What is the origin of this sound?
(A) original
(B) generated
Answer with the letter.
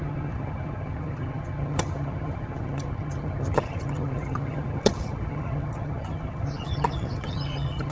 B